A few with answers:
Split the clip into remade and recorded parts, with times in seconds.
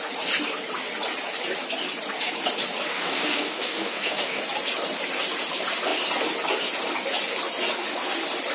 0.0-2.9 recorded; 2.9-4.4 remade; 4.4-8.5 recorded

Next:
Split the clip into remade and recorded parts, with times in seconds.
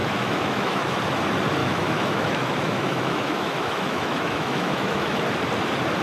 0.0-1.0 remade; 1.0-1.6 recorded; 1.6-5.2 remade; 5.2-6.0 recorded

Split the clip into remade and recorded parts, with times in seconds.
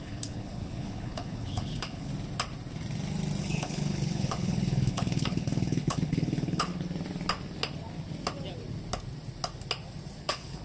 0.0-2.1 remade; 2.1-3.4 recorded; 3.4-6.7 remade; 6.7-10.2 recorded; 10.2-10.6 remade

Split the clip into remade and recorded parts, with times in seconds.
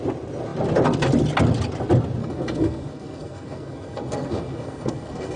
0.0-2.2 recorded; 2.2-5.4 remade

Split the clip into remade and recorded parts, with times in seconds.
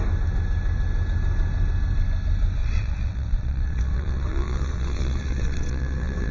0.0-2.6 recorded; 2.6-6.3 remade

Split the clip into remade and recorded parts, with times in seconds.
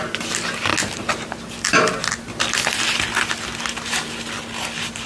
0.0-5.1 recorded